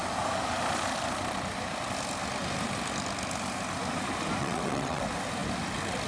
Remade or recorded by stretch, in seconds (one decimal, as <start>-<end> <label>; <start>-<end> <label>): 0.0-4.4 recorded; 4.4-5.0 remade; 5.0-6.1 recorded